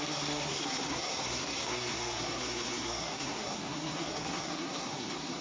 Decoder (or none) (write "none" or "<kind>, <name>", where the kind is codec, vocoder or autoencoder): codec, SNAC